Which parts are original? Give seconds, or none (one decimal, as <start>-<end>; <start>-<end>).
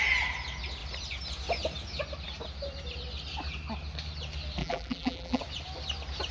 0.0-4.6; 5.4-6.3